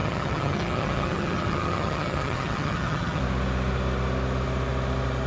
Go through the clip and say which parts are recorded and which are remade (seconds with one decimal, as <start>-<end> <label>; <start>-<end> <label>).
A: 0.0-3.2 remade; 3.2-5.3 recorded